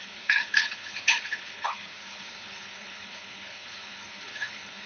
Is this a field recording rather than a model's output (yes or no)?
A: no